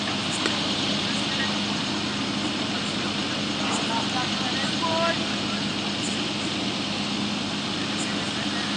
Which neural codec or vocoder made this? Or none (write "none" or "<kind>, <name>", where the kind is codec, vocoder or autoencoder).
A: none